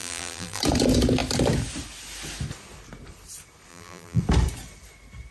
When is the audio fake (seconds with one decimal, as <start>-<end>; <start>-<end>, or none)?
0.0-0.6; 3.7-4.2